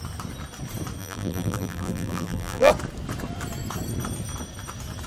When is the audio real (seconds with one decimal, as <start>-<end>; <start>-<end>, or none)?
0.0-1.0; 2.7-5.1

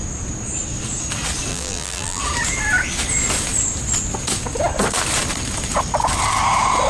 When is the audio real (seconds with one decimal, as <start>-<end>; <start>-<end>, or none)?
0.0-1.5; 2.2-6.9